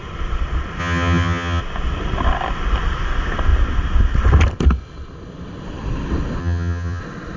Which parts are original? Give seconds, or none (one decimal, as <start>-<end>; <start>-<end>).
0.0-0.8; 1.6-6.4; 7.0-7.4